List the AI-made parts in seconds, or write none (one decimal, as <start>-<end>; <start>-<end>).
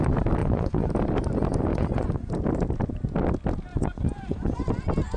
0.4-0.9; 1.7-2.3; 3.7-4.7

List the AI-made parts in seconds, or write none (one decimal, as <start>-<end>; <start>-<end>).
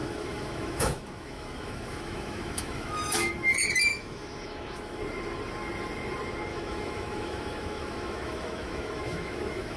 0.0-3.3; 3.9-5.0; 6.5-9.8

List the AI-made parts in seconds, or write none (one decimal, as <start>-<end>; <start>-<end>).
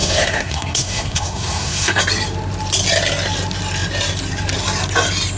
0.0-2.0